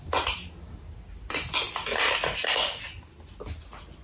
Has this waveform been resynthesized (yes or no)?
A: no